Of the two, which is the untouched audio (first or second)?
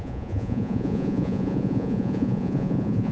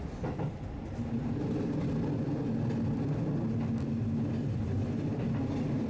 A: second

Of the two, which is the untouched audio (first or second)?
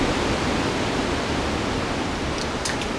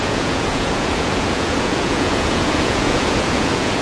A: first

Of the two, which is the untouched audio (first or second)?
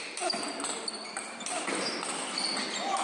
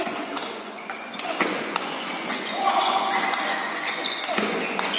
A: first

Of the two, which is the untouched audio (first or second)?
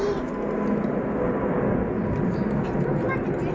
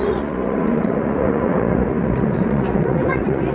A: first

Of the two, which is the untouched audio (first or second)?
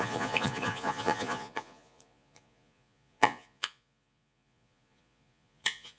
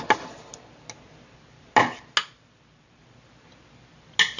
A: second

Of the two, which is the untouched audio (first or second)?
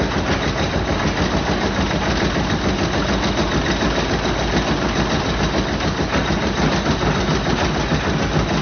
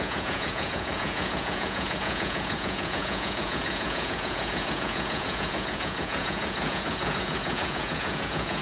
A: first